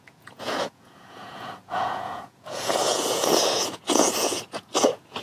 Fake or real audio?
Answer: fake